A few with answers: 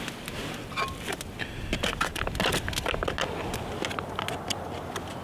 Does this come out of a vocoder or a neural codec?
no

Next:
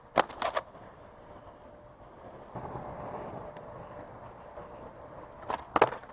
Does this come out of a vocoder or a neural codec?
no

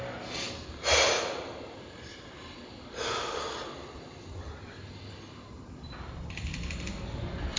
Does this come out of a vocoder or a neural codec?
no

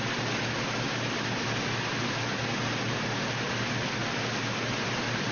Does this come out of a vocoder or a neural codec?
no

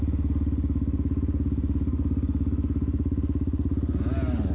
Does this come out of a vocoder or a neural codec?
no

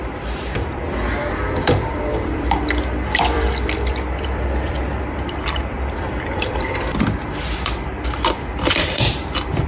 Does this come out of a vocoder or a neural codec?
yes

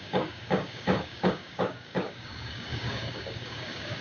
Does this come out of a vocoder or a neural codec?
yes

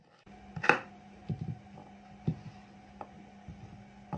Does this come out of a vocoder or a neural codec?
no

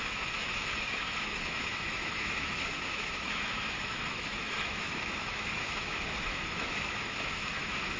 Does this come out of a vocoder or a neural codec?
yes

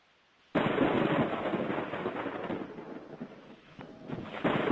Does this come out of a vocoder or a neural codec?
no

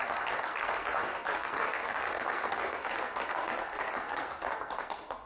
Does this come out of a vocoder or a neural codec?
yes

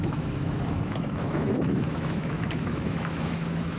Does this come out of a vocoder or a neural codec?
yes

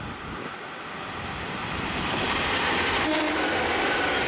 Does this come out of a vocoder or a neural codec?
no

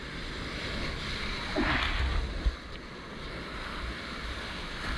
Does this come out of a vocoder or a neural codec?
no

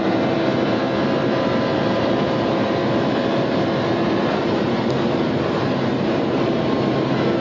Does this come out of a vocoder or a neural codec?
yes